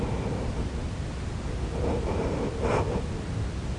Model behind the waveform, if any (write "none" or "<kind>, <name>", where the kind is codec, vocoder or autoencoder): none